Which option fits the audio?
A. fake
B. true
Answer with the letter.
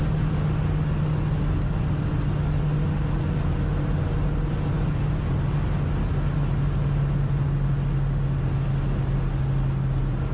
B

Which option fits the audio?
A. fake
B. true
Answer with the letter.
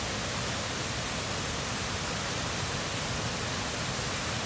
B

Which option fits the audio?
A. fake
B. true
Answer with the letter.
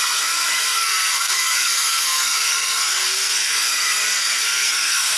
A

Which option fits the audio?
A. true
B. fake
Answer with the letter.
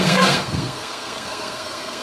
B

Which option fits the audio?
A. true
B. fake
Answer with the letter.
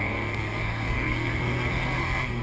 B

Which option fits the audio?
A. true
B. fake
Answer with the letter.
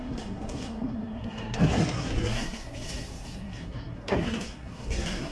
B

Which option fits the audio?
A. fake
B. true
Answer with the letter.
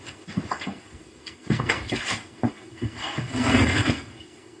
A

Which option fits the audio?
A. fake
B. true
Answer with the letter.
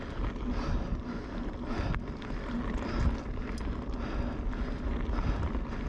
B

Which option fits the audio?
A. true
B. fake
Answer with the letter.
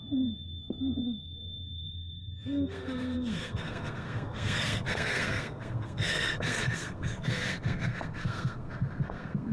B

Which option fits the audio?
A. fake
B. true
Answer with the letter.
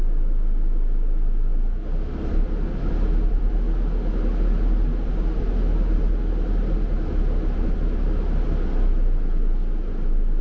B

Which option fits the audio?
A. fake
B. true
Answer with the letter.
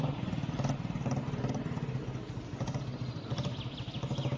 B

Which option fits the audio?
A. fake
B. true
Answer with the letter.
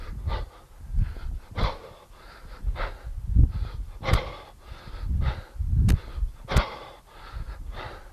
B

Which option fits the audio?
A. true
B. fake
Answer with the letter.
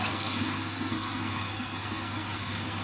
B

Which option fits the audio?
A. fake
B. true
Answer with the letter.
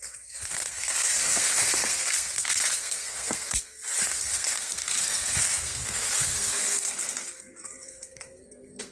A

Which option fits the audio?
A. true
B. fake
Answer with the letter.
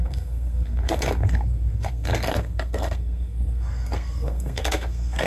B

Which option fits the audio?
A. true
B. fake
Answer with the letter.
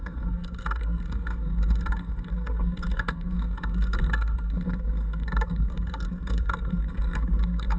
B